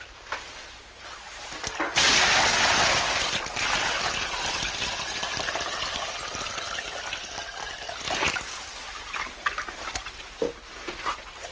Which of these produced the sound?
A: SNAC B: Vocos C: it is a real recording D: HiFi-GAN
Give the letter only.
C